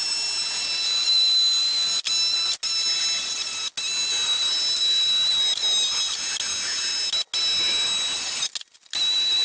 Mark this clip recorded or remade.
recorded